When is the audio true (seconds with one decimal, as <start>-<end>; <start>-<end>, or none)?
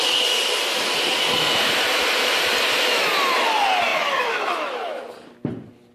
0.0-3.9; 5.0-5.9